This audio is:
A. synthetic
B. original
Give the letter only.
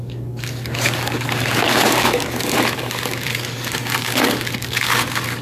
A